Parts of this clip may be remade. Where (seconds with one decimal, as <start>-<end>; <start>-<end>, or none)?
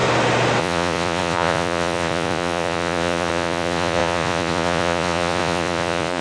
0.6-6.2